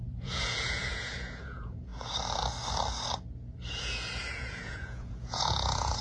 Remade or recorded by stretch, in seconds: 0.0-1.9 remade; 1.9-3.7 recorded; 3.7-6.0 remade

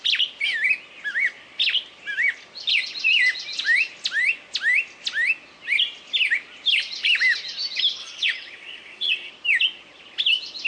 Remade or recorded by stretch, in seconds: 0.0-8.0 recorded; 8.0-9.3 remade; 9.3-10.7 recorded